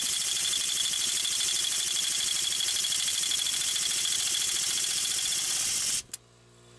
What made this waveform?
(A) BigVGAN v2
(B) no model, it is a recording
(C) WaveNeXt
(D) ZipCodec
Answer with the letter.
B